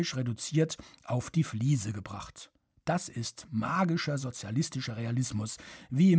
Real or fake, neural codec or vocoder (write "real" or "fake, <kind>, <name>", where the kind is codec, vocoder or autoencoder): real